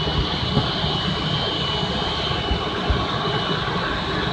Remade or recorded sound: recorded